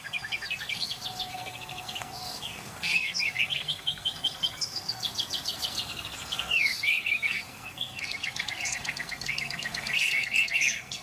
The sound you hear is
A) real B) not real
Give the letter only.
B